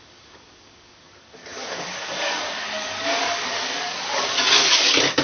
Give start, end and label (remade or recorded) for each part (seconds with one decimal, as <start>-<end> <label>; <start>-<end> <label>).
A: 0.0-5.2 remade